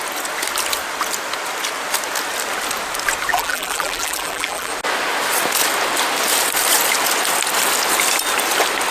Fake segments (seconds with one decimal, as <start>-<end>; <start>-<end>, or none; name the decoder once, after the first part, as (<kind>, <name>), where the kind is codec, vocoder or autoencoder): 3.3-4.7 (vocoder, BigVGAN v2)